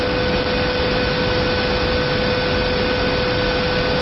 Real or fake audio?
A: real